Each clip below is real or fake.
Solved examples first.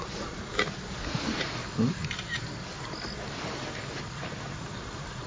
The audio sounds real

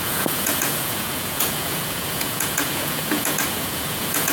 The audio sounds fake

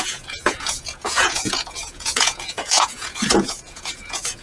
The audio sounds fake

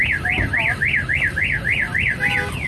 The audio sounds real